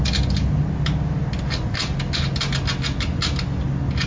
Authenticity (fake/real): real